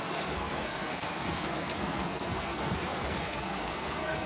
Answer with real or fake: fake